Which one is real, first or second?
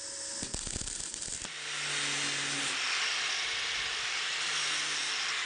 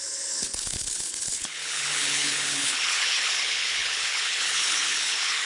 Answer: first